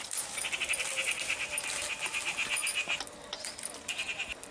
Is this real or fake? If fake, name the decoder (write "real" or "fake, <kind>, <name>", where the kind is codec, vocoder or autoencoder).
real